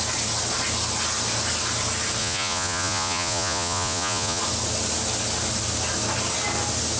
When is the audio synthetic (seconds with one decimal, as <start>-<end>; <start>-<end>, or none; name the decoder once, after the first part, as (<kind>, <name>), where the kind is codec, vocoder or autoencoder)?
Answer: 2.2-4.4 (vocoder, Vocos)

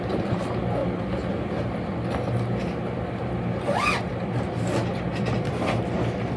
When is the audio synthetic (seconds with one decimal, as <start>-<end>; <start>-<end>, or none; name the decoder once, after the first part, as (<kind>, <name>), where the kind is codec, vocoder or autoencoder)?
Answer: none